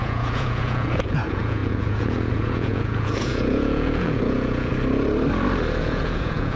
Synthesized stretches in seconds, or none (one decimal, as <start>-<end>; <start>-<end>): 0.0-4.7; 5.8-6.6